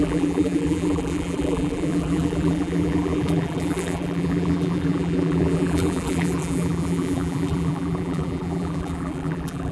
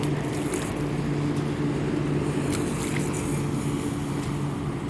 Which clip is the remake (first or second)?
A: first